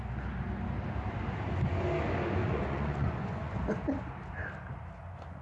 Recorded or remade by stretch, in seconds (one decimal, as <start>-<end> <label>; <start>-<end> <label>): 0.0-2.4 recorded; 2.4-3.6 remade; 3.6-5.4 recorded